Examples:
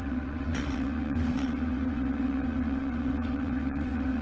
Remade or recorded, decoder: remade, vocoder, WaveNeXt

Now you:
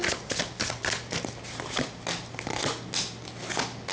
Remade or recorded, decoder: recorded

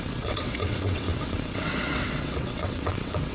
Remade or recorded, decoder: remade, vocoder, WaveNeXt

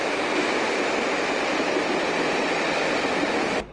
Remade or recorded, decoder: recorded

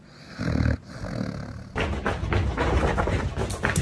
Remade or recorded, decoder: recorded